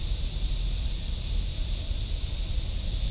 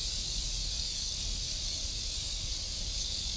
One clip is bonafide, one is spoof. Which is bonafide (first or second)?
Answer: first